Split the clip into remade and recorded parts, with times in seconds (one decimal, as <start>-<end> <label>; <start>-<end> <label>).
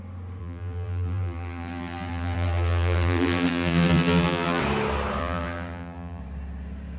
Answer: 0.0-0.4 recorded; 0.4-4.6 remade; 4.6-5.2 recorded; 5.2-6.2 remade; 6.2-7.0 recorded